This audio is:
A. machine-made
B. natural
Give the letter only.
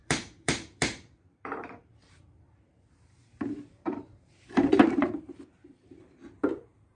A